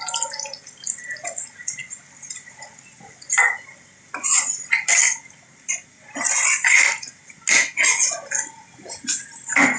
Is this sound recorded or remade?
recorded